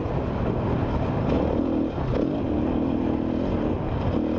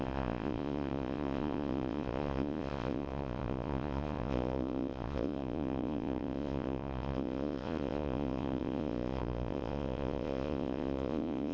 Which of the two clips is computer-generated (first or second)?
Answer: second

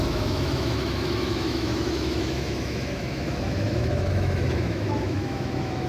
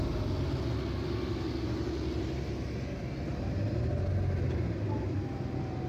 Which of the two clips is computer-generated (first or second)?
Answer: first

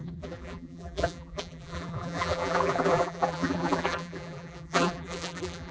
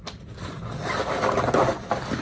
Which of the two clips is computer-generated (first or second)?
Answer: first